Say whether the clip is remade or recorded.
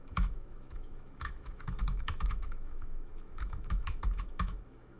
remade